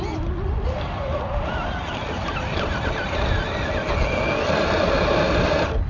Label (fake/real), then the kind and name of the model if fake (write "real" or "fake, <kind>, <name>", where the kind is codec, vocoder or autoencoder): real